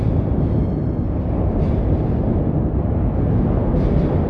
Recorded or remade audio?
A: recorded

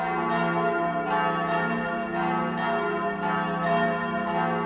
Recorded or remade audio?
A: recorded